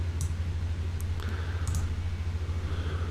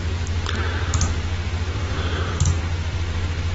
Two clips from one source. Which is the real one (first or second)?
first